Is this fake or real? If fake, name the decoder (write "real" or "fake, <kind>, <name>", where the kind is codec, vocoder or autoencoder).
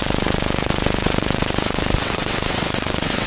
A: fake, vocoder, WaveNeXt